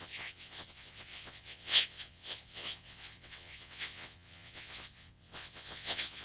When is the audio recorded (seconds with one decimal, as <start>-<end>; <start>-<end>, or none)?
none